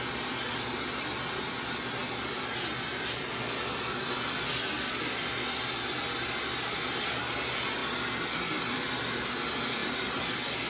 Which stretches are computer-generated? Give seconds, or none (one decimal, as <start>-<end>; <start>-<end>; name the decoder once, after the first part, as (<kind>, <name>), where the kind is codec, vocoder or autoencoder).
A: none